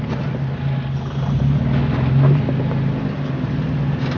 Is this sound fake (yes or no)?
no